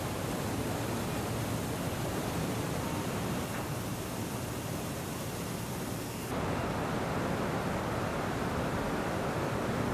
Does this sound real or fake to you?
real